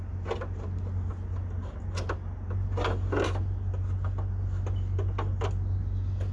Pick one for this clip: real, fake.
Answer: real